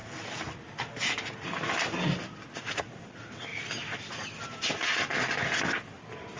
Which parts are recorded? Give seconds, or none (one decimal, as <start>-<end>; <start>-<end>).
0.0-6.4